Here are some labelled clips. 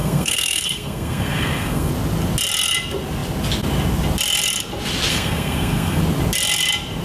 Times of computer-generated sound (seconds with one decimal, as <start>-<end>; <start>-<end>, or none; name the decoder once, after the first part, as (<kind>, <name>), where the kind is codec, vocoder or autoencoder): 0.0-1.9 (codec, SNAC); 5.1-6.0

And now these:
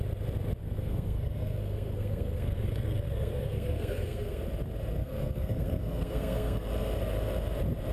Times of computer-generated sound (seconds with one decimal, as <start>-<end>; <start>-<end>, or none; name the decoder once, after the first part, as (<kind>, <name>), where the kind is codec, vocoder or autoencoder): 0.6-4.4 (codec, SNAC); 5.0-6.7

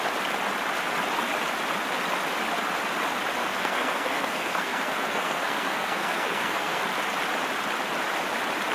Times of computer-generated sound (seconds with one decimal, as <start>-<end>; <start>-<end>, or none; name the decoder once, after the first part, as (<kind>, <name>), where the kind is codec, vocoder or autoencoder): 3.4-6.8 (codec, SNAC)

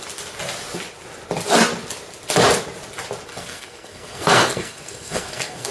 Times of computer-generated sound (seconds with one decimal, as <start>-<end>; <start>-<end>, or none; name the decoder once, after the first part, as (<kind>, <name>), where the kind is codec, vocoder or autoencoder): 3.3-5.7 (codec, SNAC)

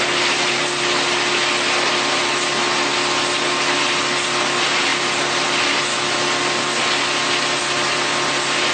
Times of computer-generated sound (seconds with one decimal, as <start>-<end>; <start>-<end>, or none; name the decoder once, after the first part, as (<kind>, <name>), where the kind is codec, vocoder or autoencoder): none